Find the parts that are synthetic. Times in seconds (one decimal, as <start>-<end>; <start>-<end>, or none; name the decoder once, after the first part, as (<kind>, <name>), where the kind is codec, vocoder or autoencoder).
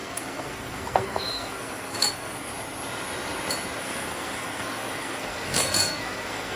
0.0-2.5 (codec, SNAC); 3.8-6.6